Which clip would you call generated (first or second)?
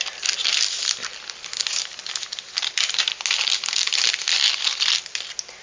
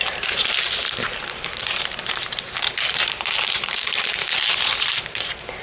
second